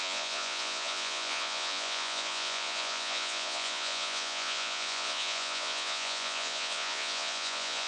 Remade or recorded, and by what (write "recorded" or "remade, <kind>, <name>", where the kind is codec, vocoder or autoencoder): remade, vocoder, Vocos